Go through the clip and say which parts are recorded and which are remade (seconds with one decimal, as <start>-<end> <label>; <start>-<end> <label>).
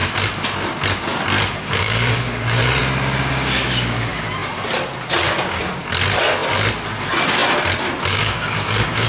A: 0.0-1.6 recorded; 1.6-2.6 remade; 2.6-3.3 recorded; 3.3-4.1 remade; 4.1-8.1 recorded; 8.1-9.1 remade